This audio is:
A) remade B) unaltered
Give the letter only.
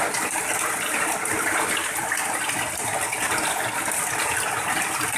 B